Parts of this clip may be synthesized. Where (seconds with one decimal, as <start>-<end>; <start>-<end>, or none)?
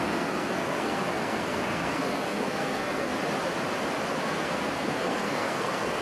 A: 0.0-3.1; 4.2-6.0